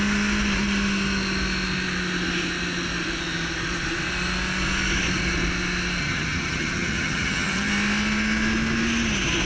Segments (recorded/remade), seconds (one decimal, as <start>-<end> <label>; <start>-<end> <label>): 0.0-6.0 recorded; 6.0-7.7 remade; 7.7-9.4 recorded